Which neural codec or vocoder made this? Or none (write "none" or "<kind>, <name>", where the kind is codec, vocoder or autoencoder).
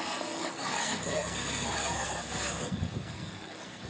codec, SNAC